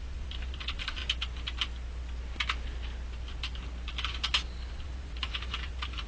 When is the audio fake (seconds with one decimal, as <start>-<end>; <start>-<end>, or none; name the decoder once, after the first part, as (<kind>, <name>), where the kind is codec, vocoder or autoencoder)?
0.0-1.0 (vocoder, BigVGAN v2); 4.7-6.1